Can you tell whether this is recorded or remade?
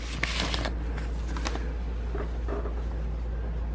recorded